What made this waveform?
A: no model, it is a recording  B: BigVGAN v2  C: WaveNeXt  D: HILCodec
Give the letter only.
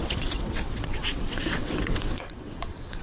C